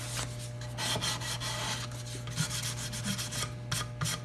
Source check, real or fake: real